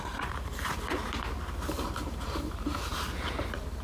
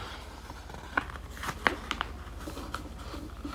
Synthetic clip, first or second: first